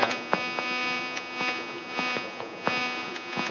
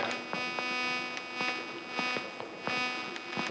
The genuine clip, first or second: second